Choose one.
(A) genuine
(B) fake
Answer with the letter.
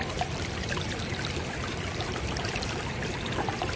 B